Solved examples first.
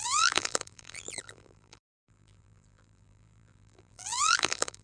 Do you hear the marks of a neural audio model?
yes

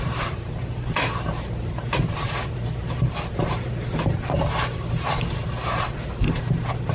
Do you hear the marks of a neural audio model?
yes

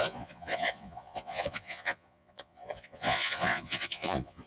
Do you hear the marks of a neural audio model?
yes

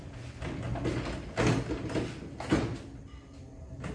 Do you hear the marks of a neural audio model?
no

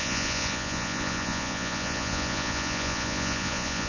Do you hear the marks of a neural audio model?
yes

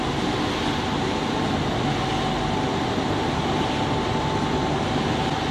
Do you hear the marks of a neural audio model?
no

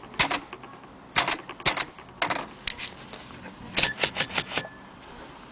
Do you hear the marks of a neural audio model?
no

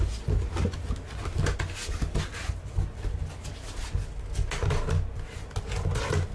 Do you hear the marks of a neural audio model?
no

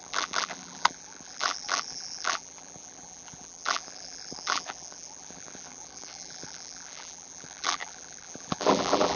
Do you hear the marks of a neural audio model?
yes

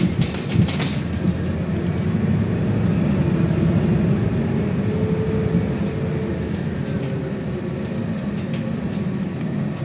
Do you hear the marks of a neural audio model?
no